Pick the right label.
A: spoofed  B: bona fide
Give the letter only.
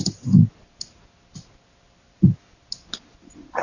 B